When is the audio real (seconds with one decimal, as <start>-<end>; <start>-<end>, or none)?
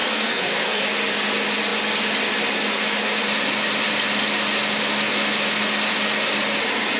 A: 0.8-7.0